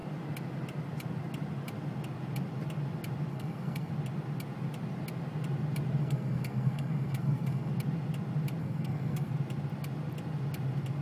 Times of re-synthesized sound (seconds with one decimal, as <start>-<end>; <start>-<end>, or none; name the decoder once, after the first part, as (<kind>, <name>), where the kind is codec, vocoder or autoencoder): 3.3-3.9 (codec, SNAC); 6.0-7.7; 8.6-9.3